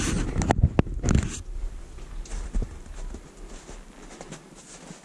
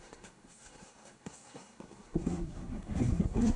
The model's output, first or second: second